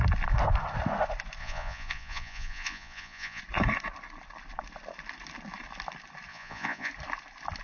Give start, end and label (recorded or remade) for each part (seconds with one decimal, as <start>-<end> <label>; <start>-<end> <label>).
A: 0.0-1.4 recorded; 1.4-3.4 remade; 3.4-6.3 recorded; 6.3-6.9 remade; 6.9-7.6 recorded